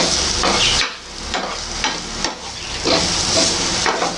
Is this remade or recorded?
recorded